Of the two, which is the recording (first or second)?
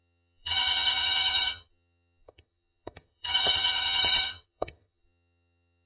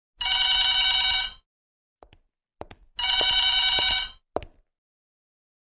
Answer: second